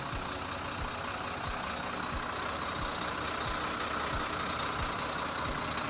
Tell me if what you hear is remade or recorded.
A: recorded